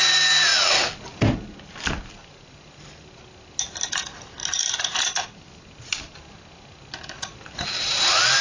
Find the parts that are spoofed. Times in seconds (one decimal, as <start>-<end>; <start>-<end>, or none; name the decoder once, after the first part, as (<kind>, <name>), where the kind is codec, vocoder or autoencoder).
none